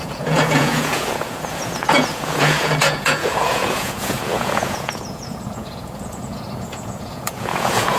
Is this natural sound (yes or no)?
no